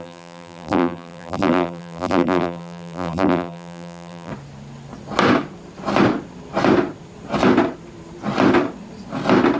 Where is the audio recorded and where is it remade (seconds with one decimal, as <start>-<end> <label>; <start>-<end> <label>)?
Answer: 0.0-4.3 remade; 4.3-9.6 recorded